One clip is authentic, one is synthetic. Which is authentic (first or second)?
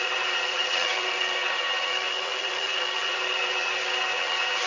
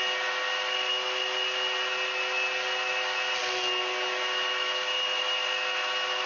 second